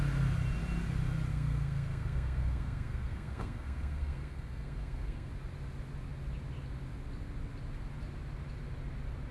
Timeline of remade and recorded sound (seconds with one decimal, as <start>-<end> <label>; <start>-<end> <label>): 0.0-1.3 recorded; 1.3-5.3 remade; 5.3-9.3 recorded